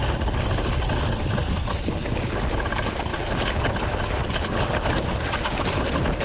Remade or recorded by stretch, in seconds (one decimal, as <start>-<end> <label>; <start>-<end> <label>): 0.0-6.2 recorded

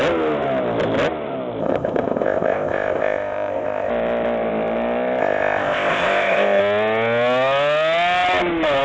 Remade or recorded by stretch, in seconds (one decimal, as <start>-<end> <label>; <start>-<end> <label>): 0.0-1.6 recorded; 1.6-3.9 remade; 3.9-5.2 recorded; 5.2-6.6 remade; 6.6-8.8 recorded